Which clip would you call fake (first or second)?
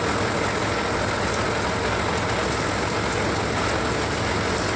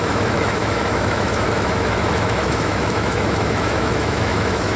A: second